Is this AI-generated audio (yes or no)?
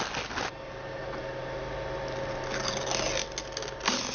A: no